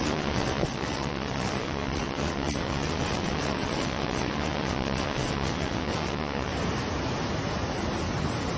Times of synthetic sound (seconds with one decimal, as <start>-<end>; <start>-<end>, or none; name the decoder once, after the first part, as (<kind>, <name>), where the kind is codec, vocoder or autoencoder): 0.0-6.5 (vocoder, WaveNeXt)